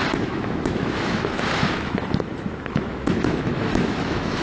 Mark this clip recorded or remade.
remade